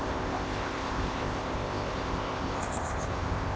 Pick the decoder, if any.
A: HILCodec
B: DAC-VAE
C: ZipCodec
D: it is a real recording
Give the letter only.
C